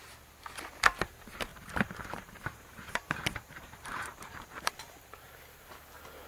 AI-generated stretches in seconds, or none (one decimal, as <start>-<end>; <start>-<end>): 1.5-5.2